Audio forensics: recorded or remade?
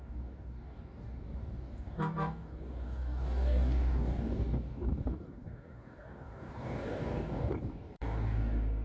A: remade